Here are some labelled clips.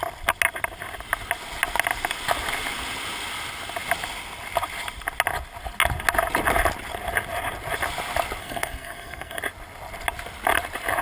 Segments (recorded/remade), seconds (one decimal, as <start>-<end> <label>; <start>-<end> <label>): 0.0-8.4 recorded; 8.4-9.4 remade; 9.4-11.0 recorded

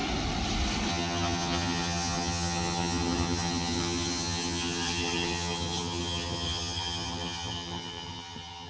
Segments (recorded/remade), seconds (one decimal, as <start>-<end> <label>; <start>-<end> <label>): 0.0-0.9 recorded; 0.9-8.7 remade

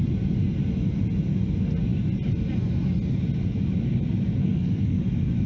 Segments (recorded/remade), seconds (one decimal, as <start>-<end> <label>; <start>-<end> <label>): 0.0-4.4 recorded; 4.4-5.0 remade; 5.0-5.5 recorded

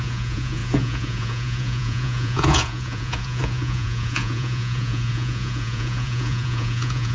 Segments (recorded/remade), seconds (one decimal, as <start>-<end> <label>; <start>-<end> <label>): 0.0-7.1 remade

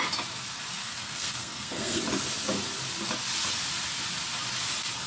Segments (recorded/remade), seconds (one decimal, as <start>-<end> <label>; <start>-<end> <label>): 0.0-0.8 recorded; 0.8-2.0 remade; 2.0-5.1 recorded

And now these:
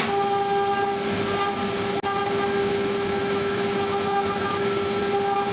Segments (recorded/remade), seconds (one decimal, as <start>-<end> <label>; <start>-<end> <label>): 0.0-3.2 recorded; 3.2-5.0 remade; 5.0-5.5 recorded

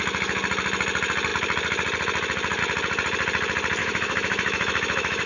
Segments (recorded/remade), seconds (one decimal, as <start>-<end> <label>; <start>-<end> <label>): 0.0-3.8 recorded; 3.8-5.3 remade